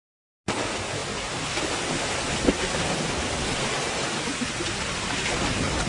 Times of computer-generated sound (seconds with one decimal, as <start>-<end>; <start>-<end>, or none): none